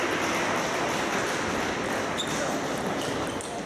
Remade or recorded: recorded